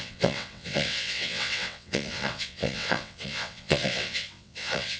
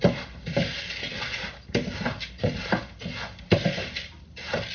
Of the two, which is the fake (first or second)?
first